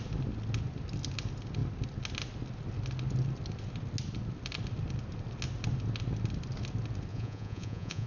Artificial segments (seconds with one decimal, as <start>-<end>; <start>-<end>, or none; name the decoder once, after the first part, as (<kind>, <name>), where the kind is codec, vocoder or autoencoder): 7.1-8.1 (vocoder, Vocos)